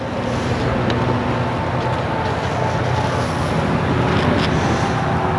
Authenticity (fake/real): real